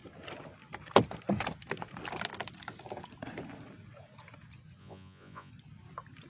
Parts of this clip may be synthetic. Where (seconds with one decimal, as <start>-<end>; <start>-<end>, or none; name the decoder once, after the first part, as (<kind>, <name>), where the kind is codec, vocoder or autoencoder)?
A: 4.8-5.5 (vocoder, Vocos)